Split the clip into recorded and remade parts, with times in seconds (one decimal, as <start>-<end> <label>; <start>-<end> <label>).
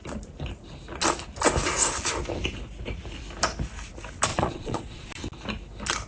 0.0-4.3 recorded; 4.3-5.1 remade; 5.1-6.1 recorded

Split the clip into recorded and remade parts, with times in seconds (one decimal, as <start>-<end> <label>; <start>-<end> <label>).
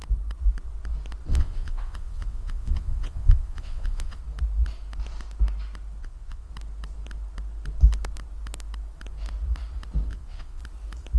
0.0-1.3 recorded; 1.3-4.2 remade; 4.2-6.0 recorded; 6.0-6.5 remade; 6.5-10.1 recorded; 10.1-10.6 remade; 10.6-11.2 recorded